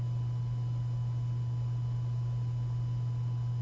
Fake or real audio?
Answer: real